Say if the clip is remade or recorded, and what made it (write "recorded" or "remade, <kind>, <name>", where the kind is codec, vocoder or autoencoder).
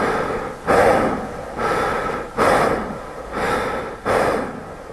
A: recorded